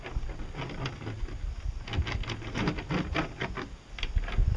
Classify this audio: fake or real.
real